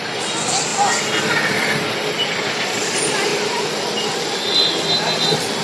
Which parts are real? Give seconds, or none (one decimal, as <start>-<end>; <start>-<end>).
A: 0.0-5.6